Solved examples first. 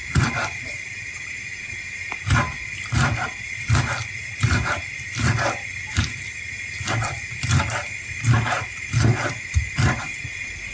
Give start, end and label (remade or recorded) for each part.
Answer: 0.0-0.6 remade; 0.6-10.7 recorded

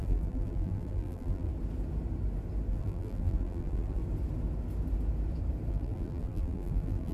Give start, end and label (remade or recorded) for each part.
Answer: 0.0-1.5 remade; 1.5-2.7 recorded; 2.7-4.0 remade; 4.0-5.7 recorded; 5.7-7.1 remade